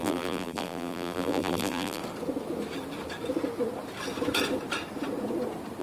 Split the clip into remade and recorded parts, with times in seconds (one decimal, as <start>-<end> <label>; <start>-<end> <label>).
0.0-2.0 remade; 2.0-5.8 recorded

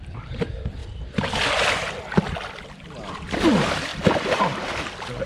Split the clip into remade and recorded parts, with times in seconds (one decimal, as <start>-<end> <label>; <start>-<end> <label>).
0.0-0.8 remade; 0.8-3.1 recorded; 3.1-3.9 remade; 3.9-4.4 recorded; 4.4-5.3 remade

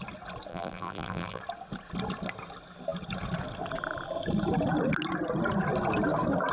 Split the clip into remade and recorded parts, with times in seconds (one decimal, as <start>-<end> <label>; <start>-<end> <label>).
0.0-0.5 recorded; 0.5-1.4 remade; 1.4-6.5 recorded